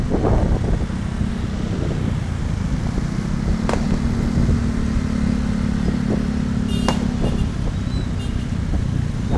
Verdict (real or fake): real